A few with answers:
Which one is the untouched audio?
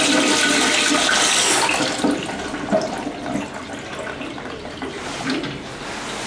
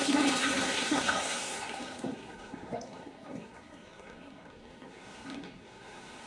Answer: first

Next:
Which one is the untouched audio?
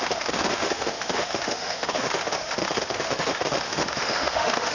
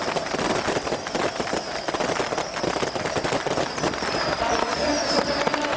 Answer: second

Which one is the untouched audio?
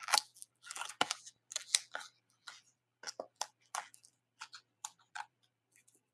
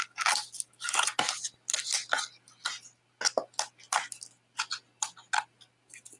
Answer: second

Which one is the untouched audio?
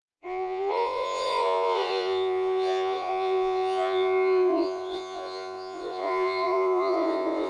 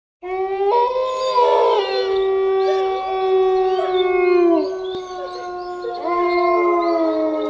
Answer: second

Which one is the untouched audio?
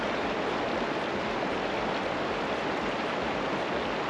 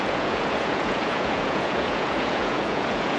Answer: first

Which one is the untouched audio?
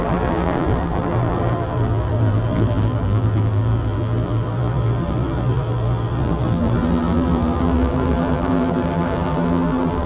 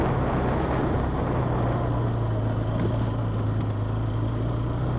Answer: second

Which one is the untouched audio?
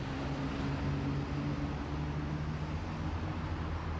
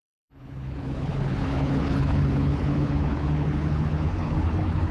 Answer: first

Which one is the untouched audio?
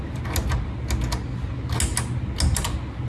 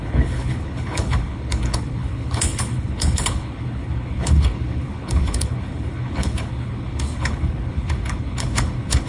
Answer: first